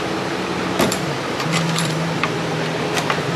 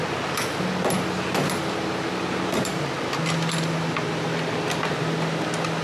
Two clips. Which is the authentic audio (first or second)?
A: second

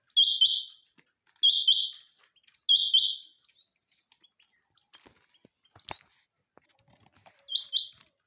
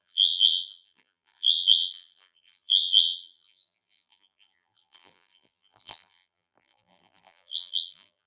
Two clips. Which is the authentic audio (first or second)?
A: first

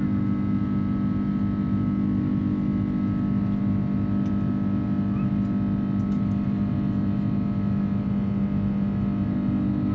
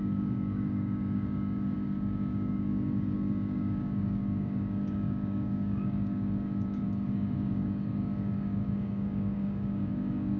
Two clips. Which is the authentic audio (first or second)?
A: first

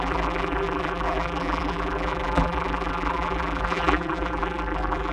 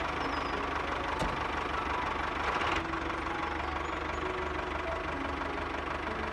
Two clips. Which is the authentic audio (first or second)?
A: second